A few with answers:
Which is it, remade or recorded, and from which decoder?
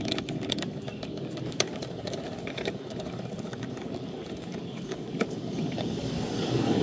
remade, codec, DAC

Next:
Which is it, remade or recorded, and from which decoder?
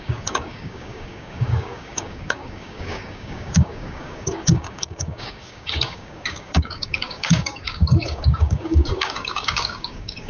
remade, codec, DAC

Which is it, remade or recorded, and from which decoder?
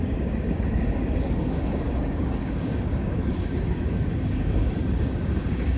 remade, codec, DAC